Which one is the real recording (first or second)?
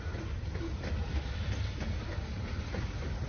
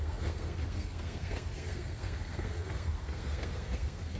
first